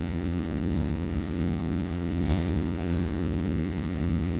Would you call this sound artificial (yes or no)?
yes